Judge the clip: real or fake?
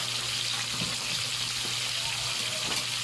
real